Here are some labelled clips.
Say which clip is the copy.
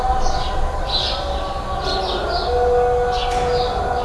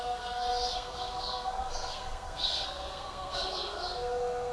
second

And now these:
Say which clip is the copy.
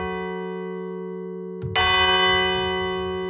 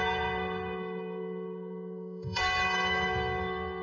second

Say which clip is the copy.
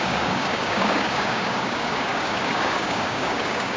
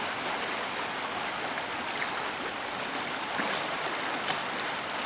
first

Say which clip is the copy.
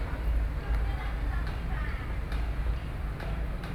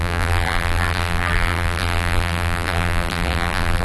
second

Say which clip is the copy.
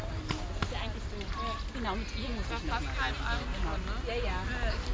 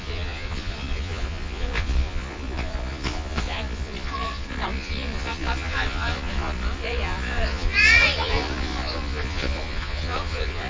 second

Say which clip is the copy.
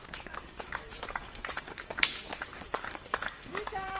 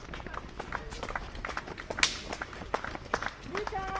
first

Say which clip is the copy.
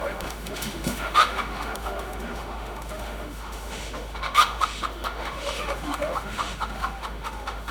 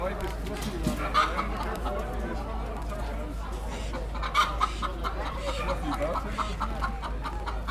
first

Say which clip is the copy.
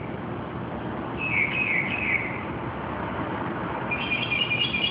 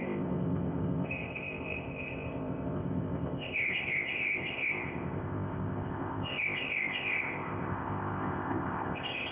second